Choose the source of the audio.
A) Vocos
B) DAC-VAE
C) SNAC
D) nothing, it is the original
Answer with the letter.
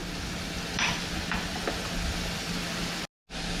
D